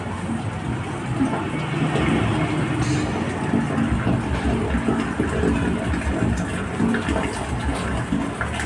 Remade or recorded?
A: recorded